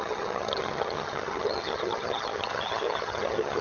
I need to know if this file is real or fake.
fake